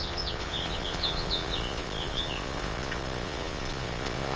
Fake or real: fake